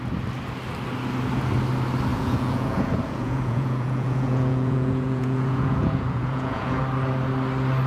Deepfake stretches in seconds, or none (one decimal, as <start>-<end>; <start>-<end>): 2.1-6.8